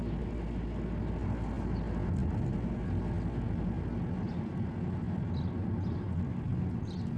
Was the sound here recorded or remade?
recorded